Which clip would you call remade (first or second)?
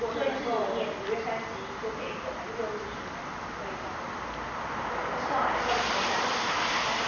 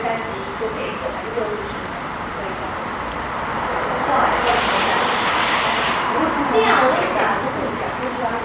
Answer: second